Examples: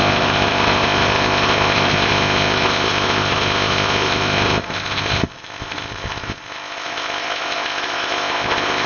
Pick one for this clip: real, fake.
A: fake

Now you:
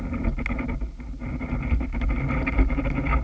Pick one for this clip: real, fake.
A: real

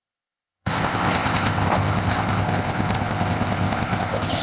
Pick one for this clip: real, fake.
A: fake